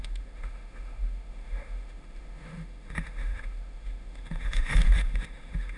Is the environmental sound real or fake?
fake